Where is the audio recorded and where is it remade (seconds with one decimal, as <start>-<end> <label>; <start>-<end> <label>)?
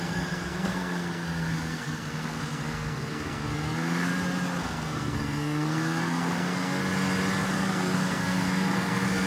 0.0-4.1 remade; 4.1-4.6 recorded; 4.6-6.8 remade; 6.8-7.5 recorded; 7.5-9.3 remade